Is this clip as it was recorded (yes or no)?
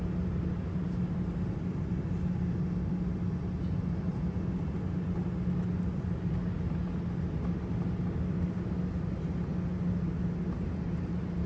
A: yes